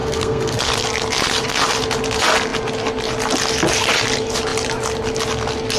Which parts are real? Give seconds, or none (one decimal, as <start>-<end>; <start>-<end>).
0.6-5.8